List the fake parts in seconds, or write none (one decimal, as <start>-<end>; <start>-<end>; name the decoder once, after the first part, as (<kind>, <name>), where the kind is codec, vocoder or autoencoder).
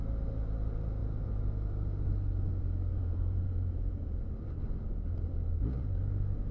2.9-4.3 (vocoder, Vocos)